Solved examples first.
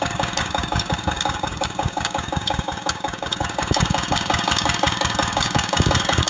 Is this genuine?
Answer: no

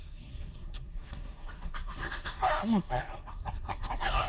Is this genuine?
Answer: no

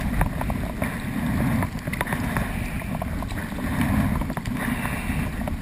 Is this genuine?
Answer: yes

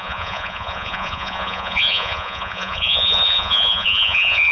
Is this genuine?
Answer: no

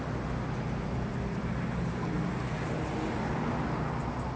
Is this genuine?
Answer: yes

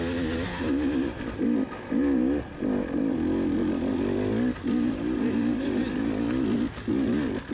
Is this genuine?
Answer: yes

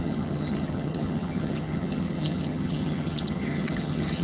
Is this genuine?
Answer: no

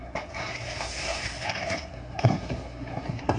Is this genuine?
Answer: no